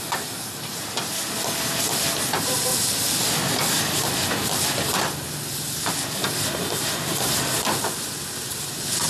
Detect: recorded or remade recorded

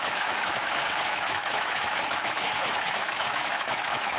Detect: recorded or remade remade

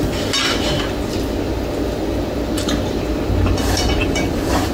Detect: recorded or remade recorded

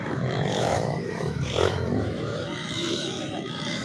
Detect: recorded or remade remade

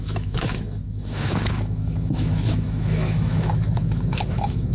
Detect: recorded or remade remade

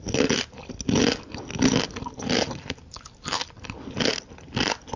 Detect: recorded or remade recorded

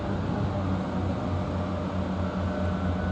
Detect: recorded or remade recorded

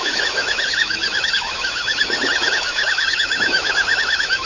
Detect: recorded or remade remade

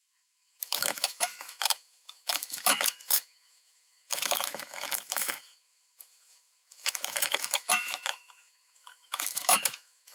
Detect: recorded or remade remade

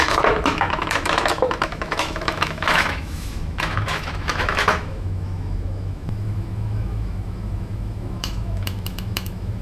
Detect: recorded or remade remade